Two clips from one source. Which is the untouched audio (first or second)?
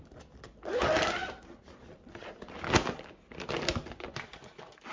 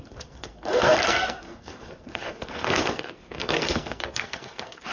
first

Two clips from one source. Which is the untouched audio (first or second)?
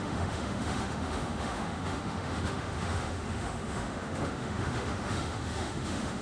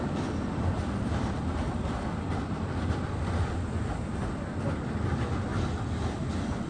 second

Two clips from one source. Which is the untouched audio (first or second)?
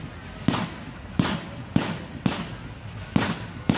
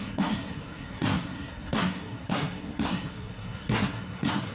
first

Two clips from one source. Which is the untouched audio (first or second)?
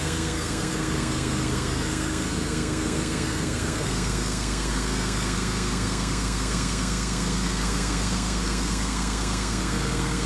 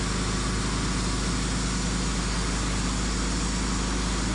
second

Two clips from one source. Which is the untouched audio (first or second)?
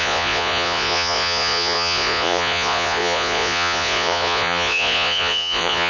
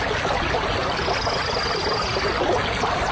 second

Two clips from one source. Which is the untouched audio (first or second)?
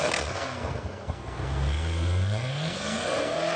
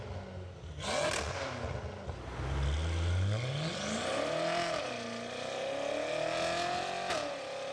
second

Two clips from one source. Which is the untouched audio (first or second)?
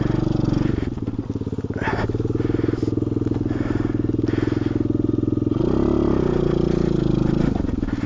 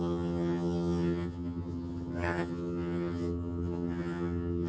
first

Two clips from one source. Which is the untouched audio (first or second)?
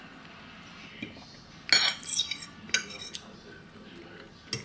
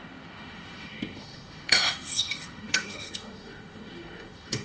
first